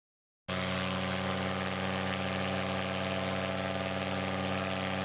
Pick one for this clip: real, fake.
real